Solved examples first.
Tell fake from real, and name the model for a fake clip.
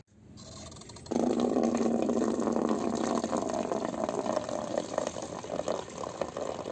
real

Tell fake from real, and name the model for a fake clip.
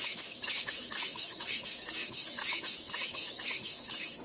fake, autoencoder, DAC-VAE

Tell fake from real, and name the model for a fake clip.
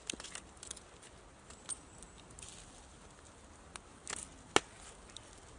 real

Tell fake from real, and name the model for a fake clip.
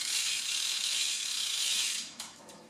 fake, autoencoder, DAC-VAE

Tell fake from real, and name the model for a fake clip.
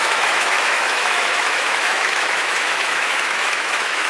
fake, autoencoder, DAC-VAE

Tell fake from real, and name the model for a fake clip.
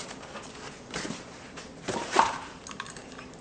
real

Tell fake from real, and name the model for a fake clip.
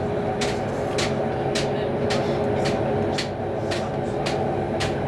real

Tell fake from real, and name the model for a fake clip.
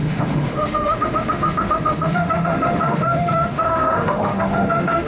fake, autoencoder, DAC-VAE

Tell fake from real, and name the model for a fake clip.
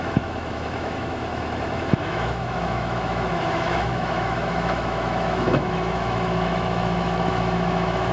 fake, autoencoder, DAC-VAE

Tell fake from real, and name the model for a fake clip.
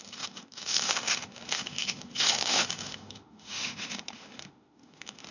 fake, autoencoder, DAC-VAE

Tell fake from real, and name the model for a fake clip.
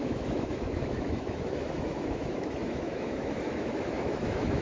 fake, autoencoder, DAC-VAE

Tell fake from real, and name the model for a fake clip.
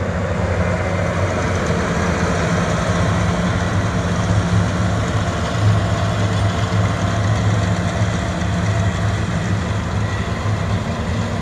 real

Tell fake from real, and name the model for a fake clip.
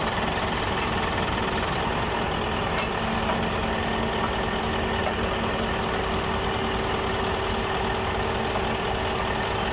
real